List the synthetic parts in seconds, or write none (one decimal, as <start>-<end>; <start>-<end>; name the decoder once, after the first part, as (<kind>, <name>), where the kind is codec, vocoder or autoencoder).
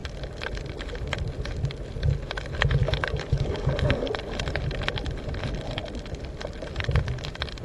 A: 2.8-4.1 (codec, DAC)